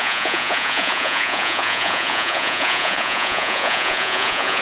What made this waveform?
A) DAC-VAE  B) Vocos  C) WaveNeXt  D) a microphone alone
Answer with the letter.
B